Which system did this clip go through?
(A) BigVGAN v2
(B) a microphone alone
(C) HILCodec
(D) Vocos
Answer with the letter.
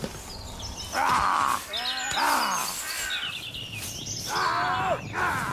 B